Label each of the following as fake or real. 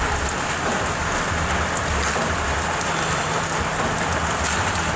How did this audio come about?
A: real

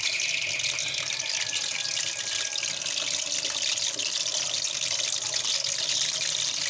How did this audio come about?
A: real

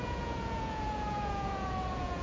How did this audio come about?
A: fake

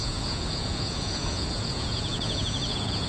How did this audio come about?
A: fake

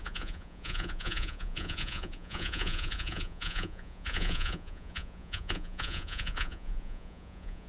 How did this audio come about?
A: fake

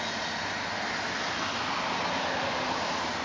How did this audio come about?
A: real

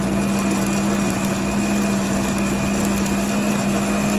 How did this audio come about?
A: real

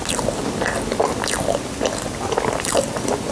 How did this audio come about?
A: real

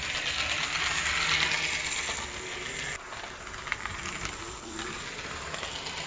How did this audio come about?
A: real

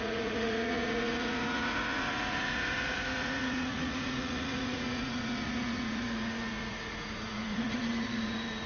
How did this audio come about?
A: fake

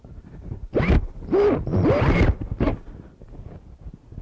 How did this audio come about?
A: real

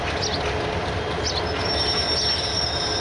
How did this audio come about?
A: real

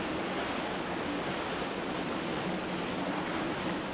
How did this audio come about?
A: real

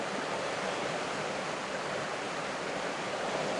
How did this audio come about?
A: real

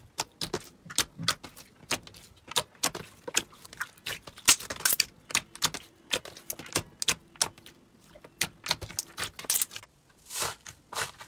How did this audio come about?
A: real